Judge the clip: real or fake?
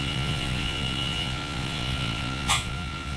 fake